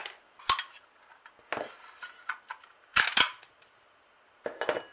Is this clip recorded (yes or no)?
yes